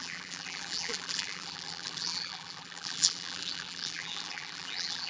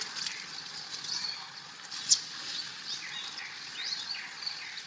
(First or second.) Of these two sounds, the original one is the second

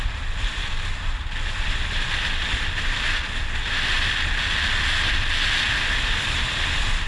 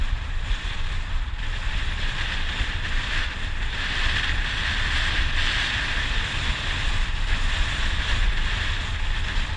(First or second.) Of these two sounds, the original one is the first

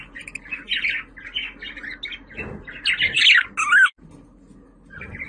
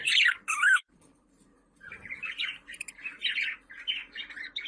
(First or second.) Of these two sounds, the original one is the first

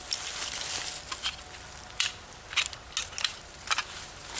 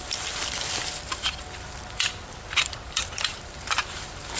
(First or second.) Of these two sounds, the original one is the first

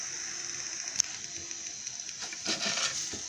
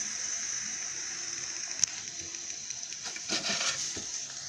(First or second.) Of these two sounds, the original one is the first